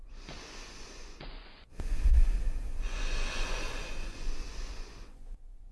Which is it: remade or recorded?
remade